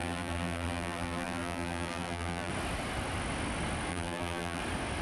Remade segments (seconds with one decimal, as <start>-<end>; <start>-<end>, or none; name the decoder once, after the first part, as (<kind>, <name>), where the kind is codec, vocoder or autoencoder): 0.0-2.5 (vocoder, BigVGAN v2); 3.9-4.6